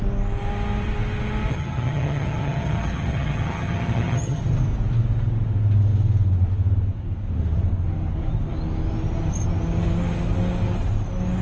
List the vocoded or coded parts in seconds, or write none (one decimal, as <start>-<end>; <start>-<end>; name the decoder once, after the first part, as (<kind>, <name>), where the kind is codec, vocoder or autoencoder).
1.5-4.4 (vocoder, HiFi-GAN)